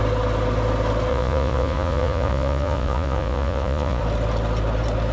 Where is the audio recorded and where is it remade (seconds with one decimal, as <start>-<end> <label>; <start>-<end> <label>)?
0.0-1.1 recorded; 1.1-4.0 remade; 4.0-5.1 recorded